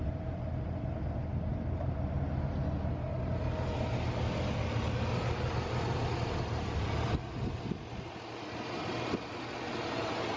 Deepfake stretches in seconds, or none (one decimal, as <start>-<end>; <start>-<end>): none